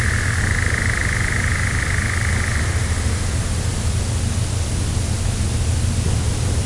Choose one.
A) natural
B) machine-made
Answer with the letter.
A